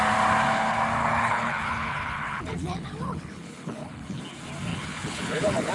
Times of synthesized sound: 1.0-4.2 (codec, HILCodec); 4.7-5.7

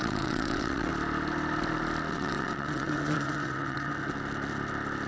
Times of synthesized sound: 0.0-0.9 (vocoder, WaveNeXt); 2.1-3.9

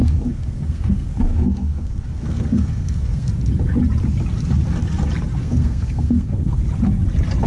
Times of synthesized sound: 0.0-3.3 (codec, SNAC); 5.4-6.6

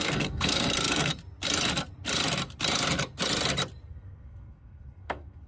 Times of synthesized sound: 0.0-1.1 (codec, SNAC); 3.9-5.5